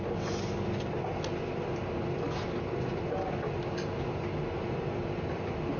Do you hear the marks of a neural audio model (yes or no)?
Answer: no